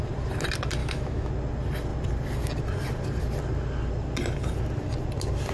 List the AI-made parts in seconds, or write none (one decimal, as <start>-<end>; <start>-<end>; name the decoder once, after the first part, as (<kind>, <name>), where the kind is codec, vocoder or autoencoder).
0.8-1.3 (autoencoder, DAC-VAE)